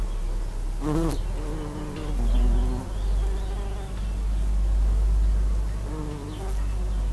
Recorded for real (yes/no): yes